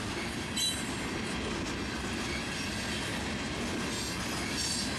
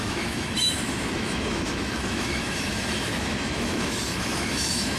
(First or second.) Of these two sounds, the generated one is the second